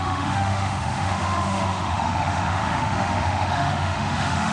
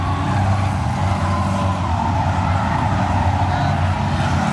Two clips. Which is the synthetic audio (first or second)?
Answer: first